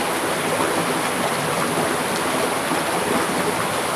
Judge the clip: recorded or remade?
recorded